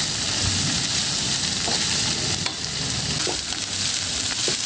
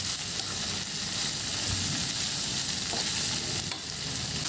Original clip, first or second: second